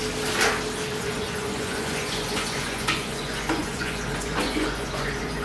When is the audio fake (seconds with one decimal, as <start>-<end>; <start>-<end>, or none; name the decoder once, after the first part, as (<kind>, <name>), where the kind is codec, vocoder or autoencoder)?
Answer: 1.0-5.4 (vocoder, Vocos)